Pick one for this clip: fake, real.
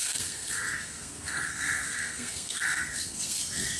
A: fake